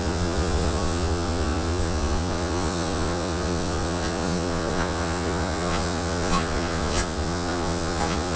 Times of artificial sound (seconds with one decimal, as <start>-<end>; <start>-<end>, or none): 0.0-8.4

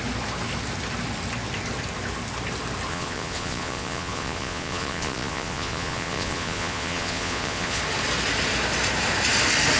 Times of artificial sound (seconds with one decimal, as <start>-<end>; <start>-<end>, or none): 2.9-7.8

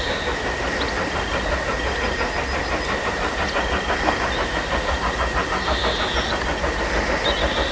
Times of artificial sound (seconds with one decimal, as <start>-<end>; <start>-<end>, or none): none

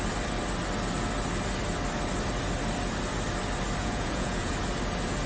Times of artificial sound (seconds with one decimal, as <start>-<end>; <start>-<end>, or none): 3.8-4.5

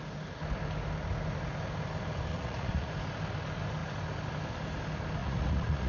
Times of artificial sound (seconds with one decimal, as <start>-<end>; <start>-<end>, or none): 2.3-2.9; 5.2-5.9